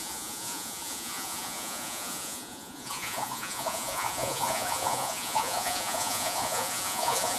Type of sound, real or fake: fake